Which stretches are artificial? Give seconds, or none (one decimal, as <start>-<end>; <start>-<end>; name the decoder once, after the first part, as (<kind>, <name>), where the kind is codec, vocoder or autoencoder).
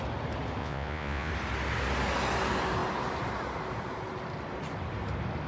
0.6-1.3 (vocoder, Vocos)